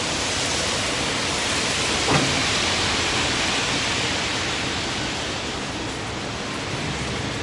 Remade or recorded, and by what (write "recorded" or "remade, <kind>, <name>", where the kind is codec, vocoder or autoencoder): recorded